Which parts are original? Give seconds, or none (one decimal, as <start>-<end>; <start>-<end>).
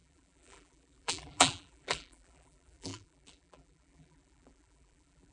none